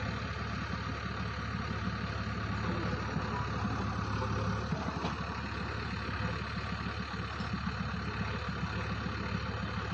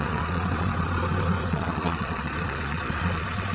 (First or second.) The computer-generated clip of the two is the second